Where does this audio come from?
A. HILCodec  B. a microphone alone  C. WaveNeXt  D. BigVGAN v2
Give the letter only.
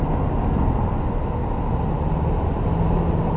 B